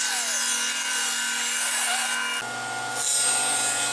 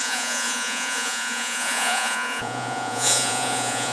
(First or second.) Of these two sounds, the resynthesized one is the second